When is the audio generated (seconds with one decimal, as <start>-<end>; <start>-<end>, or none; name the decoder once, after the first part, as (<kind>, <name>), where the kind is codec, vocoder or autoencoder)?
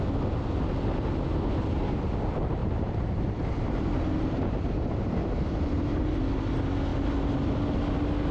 2.6-6.0 (vocoder, BigVGAN v2)